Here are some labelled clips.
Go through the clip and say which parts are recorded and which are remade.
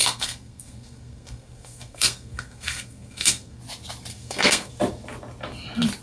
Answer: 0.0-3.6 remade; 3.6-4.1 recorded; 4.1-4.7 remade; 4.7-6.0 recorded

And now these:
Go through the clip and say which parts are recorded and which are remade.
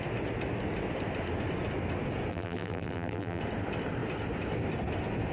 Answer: 0.0-2.3 recorded; 2.3-3.4 remade; 3.4-5.3 recorded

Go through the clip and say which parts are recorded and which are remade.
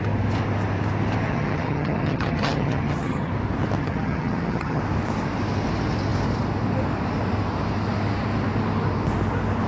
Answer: 0.0-1.3 recorded; 1.3-3.3 remade; 3.3-3.8 recorded; 3.8-4.8 remade; 4.8-9.7 recorded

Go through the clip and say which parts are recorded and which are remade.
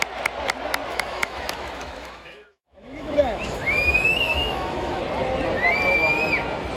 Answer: 0.0-0.9 recorded; 0.9-5.0 remade; 5.0-6.8 recorded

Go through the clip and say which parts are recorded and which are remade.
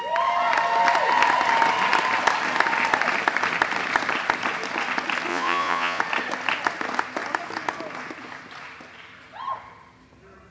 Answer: 0.0-5.3 recorded; 5.3-6.0 remade; 6.0-10.5 recorded